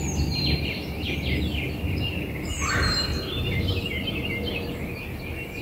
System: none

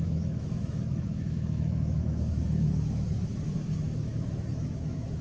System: autoencoder, DAC-VAE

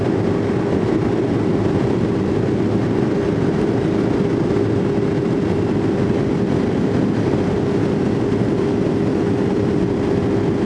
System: none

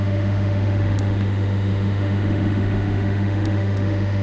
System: autoencoder, DAC-VAE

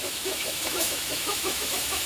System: autoencoder, DAC-VAE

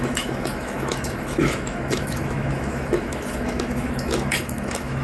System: autoencoder, DAC-VAE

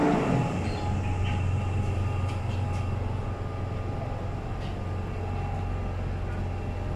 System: none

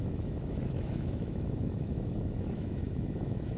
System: autoencoder, DAC-VAE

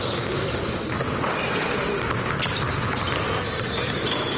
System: none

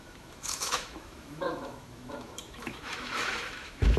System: autoencoder, DAC-VAE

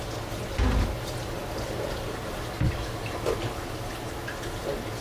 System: none